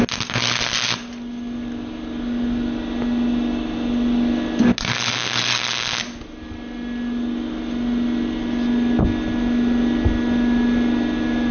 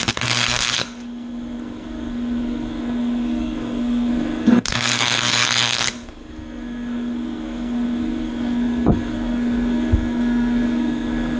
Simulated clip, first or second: second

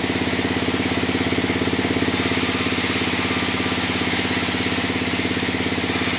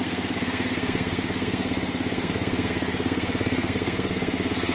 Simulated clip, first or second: second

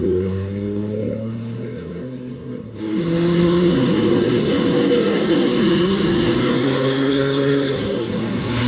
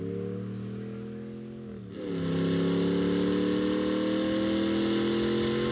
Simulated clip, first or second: first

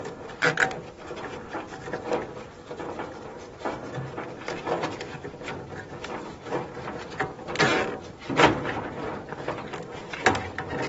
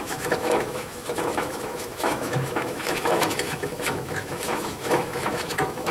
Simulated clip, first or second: second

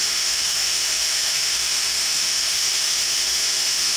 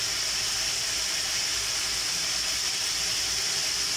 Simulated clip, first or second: first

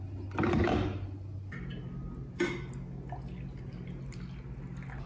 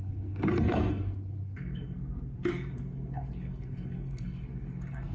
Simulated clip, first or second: second